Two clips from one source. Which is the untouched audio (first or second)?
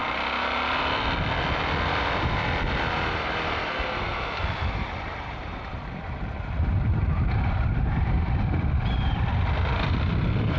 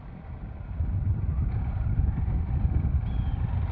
second